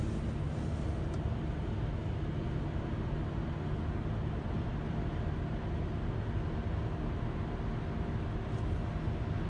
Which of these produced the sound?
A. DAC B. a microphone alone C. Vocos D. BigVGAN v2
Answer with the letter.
B